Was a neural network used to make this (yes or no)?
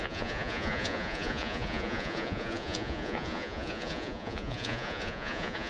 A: yes